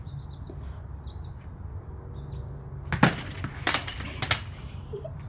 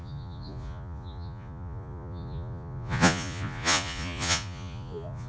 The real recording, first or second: first